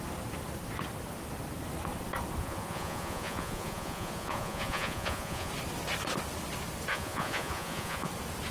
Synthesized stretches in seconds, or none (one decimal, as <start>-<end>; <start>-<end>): 2.4-5.5; 6.9-8.1